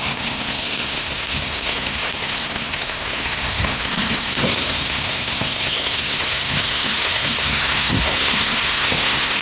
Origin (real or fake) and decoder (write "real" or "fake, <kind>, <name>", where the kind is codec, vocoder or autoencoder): fake, codec, SNAC